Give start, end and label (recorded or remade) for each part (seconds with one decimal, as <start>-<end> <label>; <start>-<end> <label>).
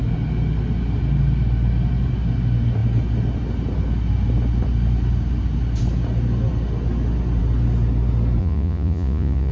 0.0-8.4 recorded; 8.4-9.5 remade